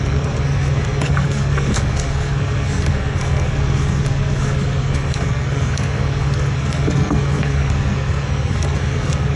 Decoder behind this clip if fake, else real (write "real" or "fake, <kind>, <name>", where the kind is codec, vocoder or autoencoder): fake, codec, SNAC